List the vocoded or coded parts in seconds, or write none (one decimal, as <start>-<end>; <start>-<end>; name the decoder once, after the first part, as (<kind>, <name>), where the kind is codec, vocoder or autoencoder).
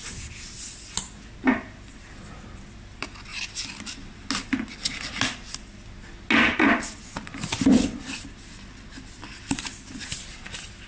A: none